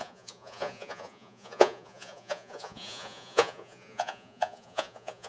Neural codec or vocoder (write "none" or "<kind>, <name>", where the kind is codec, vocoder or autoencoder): vocoder, Vocos